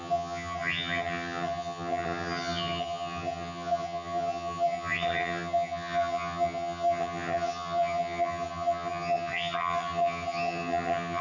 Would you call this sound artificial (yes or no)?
yes